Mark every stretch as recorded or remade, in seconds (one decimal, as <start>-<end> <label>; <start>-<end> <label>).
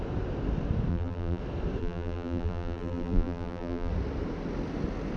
0.0-0.9 recorded; 0.9-1.4 remade; 1.4-1.8 recorded; 1.8-3.9 remade; 3.9-5.2 recorded